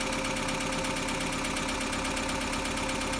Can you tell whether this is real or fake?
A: real